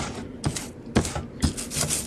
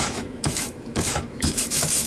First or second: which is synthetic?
second